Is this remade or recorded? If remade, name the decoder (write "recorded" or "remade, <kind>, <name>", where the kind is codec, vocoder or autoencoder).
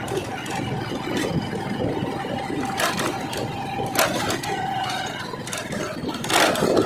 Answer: recorded